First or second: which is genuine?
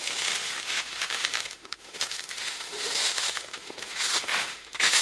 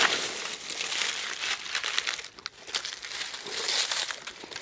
second